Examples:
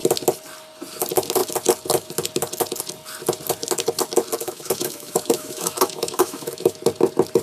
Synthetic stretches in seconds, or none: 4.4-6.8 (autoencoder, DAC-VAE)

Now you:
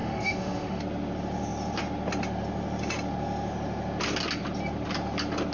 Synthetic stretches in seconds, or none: 0.0-0.8 (autoencoder, DAC-VAE)

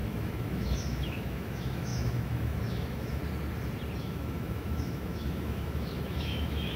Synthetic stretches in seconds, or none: 0.0-3.2 (autoencoder, DAC-VAE); 4.0-6.8

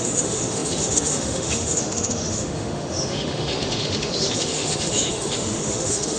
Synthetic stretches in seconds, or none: 0.0-6.2 (autoencoder, DAC-VAE)

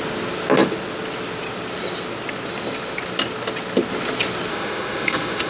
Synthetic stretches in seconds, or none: 4.5-5.5 (autoencoder, DAC-VAE)